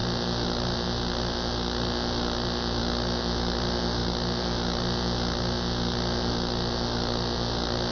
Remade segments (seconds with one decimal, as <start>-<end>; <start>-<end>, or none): none